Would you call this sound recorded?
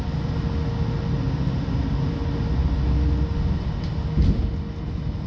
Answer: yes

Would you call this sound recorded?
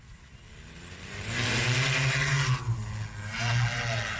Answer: yes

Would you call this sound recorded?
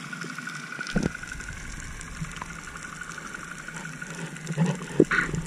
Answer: yes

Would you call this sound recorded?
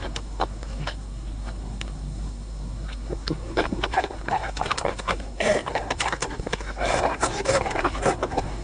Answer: no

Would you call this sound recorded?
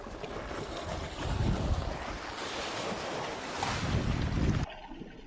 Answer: yes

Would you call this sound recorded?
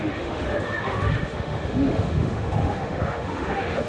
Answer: no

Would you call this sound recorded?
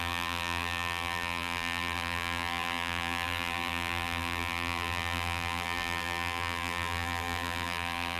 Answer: no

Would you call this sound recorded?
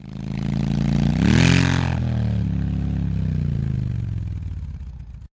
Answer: yes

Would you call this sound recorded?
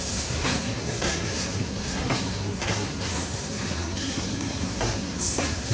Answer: no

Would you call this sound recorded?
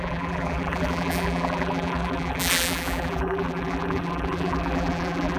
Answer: no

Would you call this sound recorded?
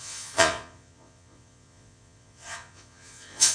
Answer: no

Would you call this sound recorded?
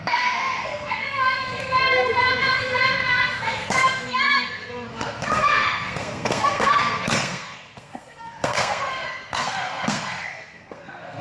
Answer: no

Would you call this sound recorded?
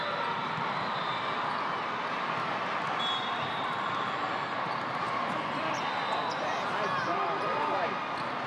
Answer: yes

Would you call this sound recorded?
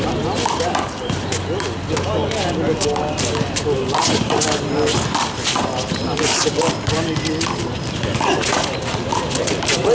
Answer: yes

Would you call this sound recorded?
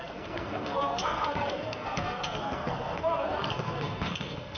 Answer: no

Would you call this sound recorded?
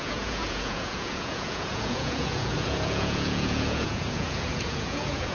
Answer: no